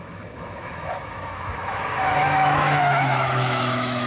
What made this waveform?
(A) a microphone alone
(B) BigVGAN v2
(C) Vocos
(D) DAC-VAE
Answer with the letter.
D